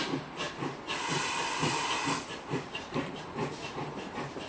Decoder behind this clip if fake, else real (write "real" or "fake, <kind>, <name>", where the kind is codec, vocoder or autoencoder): fake, vocoder, BigVGAN v2